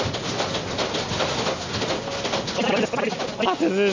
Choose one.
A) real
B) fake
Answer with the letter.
A